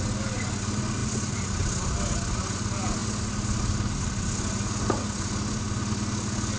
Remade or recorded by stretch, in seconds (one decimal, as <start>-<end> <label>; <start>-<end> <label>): 0.0-6.6 recorded